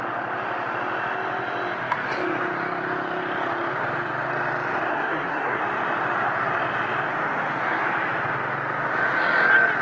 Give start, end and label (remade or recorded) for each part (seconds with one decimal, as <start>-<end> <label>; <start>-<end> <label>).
0.0-4.9 recorded; 4.9-5.6 remade; 5.6-9.8 recorded